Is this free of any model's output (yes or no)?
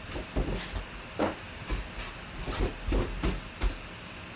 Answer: yes